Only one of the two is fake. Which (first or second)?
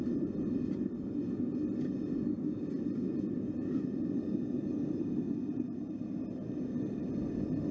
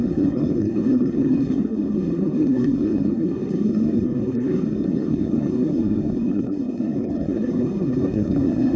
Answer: second